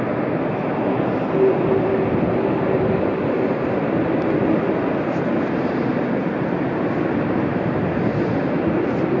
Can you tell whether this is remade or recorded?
recorded